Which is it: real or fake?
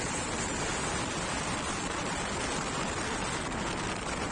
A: real